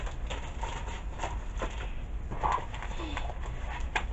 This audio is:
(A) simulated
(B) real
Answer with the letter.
B